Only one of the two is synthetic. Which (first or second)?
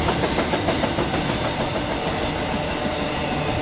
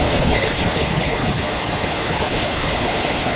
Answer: second